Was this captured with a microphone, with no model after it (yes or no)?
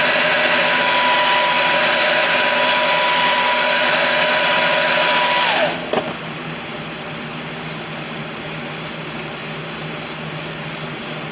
yes